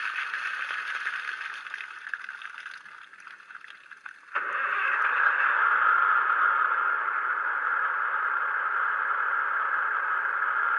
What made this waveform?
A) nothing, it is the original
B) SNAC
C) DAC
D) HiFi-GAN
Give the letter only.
A